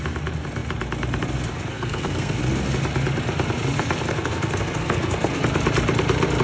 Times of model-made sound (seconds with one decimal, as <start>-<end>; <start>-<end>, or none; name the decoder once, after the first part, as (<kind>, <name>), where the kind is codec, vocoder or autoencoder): 1.7-2.4 (codec, SNAC); 4.1-5.4